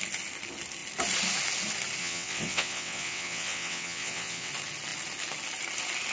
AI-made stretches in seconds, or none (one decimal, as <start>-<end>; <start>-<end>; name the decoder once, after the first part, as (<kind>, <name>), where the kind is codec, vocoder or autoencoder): 2.0-4.5 (vocoder, WaveNeXt)